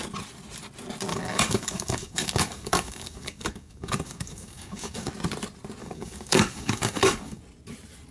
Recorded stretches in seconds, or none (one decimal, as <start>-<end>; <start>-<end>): 0.0-1.1; 5.1-5.8; 7.4-8.1